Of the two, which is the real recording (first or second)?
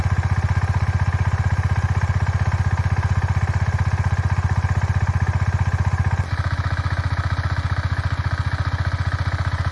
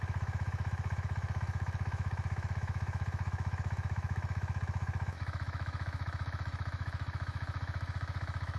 first